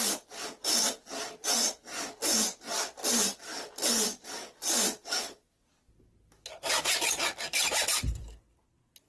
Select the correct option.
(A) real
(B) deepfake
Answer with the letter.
A